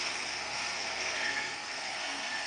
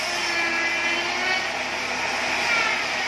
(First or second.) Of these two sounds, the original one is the second